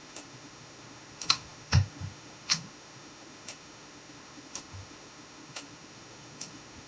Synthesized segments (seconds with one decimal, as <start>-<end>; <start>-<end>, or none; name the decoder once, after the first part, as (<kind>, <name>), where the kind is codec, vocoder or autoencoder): 0.0-6.9 (autoencoder, DAC-VAE)